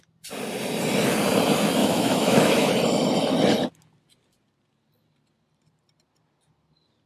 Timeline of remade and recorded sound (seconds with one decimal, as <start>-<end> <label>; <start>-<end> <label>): 0.0-1.8 recorded; 1.8-2.7 remade; 2.7-7.1 recorded